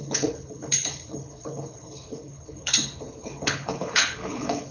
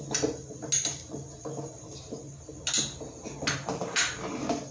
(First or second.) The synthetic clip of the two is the first